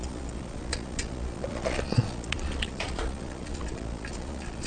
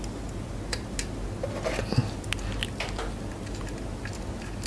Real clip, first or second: second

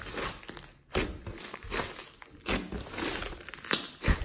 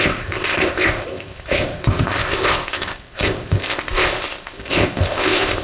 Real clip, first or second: first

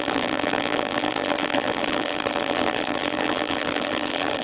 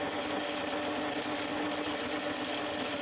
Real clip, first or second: second